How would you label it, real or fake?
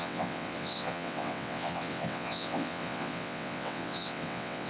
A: fake